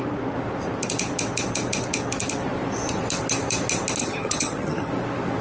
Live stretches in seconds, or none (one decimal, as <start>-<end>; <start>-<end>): 0.0-4.0; 4.9-5.4